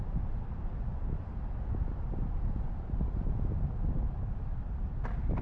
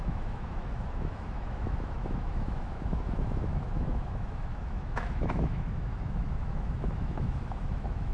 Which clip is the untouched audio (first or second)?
first